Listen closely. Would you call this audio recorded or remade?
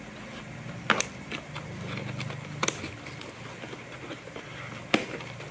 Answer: recorded